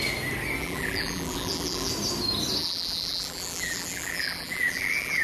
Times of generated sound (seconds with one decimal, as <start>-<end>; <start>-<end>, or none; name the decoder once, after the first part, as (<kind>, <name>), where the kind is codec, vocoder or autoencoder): 0.6-1.9 (vocoder, BigVGAN v2); 2.6-5.2